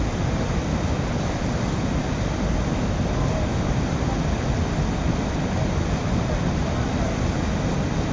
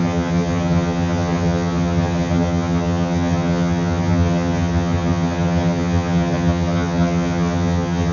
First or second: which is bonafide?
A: first